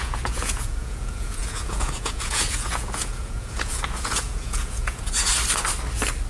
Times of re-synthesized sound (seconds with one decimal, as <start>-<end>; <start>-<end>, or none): 0.0-5.3